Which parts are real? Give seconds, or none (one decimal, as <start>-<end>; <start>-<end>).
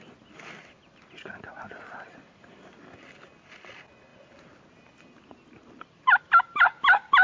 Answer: 0.0-7.2